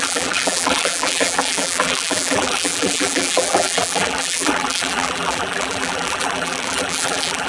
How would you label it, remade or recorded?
remade